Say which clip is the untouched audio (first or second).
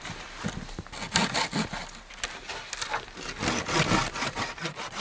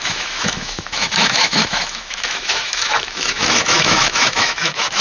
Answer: first